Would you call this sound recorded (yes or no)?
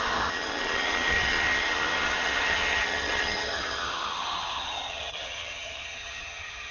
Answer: no